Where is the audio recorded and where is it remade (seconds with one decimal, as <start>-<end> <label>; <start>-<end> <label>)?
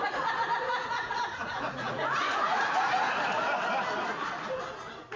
0.0-3.4 remade; 3.4-5.2 recorded